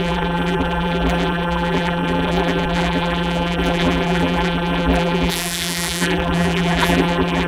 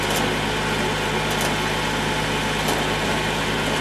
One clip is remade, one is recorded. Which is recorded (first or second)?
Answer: second